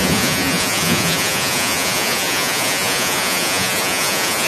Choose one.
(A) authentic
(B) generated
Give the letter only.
B